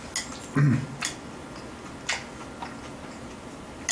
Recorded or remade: recorded